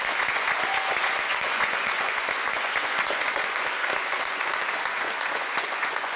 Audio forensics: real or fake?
fake